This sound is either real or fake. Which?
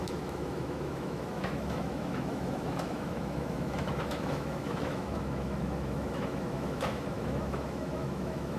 fake